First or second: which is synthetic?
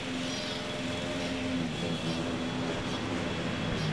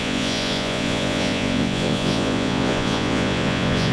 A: second